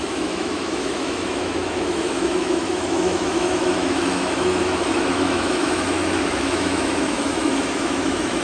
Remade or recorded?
remade